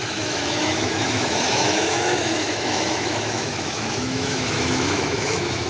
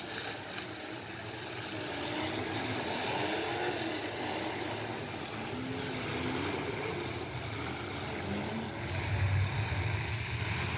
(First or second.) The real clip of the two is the second